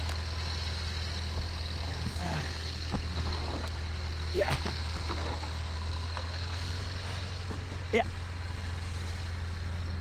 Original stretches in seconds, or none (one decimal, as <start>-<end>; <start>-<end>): 0.0-1.9; 3.4-4.1; 6.8-10.0